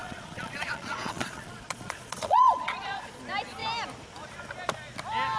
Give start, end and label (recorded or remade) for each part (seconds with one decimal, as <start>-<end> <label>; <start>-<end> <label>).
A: 0.0-3.2 remade; 3.2-5.4 recorded